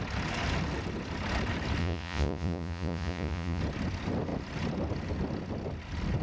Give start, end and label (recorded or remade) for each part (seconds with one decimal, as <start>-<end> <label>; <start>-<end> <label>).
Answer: 0.0-1.8 recorded; 1.8-3.6 remade; 3.6-6.2 recorded